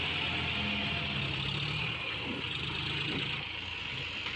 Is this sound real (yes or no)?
yes